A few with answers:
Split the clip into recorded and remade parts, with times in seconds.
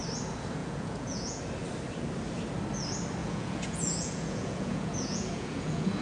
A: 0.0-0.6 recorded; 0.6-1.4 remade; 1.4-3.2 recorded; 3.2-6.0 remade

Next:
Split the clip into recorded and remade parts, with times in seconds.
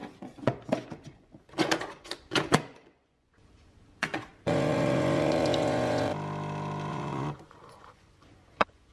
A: 0.0-6.1 remade; 6.1-6.9 recorded; 6.9-8.9 remade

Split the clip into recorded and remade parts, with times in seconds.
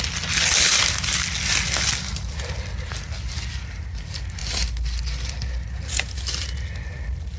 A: 0.0-7.4 recorded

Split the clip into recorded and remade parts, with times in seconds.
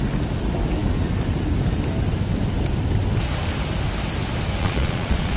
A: 0.0-4.6 recorded; 4.6-5.4 remade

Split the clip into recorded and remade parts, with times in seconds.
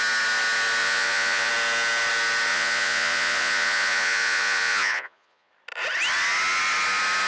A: 0.0-0.8 recorded; 0.8-1.5 remade; 1.5-2.5 recorded; 2.5-5.5 remade; 5.5-7.3 recorded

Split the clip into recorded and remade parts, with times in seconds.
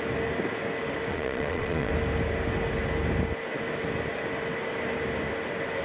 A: 0.0-1.1 recorded; 1.1-1.9 remade; 1.9-5.8 recorded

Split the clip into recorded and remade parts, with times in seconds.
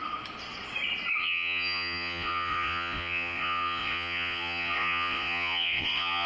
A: 0.0-1.2 recorded; 1.2-6.3 remade